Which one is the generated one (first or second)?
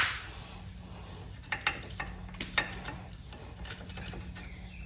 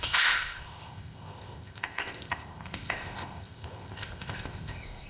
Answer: second